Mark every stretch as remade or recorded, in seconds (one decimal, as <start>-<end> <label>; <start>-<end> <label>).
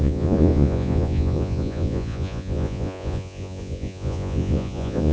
0.0-5.1 remade